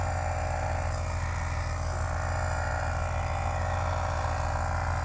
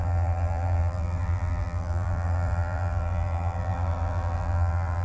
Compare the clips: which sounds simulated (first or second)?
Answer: second